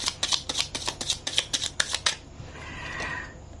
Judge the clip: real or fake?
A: real